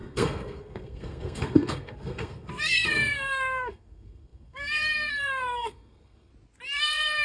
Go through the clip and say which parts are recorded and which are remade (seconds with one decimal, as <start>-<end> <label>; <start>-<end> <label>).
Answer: 0.0-6.3 remade; 6.3-6.8 recorded; 6.8-7.2 remade